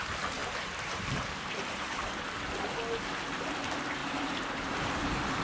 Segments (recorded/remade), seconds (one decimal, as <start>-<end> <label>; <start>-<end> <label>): 0.0-0.4 recorded; 0.4-2.1 remade; 2.1-4.0 recorded; 4.0-5.4 remade